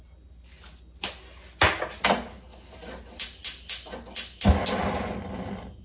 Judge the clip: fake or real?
real